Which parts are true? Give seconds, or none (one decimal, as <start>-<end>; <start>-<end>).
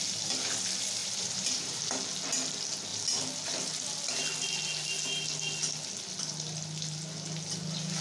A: 0.0-1.0; 1.8-8.0